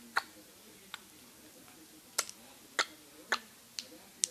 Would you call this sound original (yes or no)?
yes